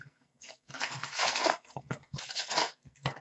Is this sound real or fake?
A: fake